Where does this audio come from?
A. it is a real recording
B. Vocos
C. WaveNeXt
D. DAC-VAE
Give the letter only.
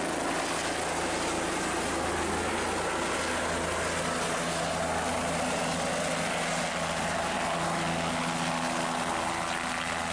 A